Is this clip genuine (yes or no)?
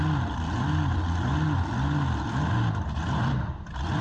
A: yes